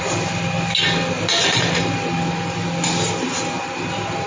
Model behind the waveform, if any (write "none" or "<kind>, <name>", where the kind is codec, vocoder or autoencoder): none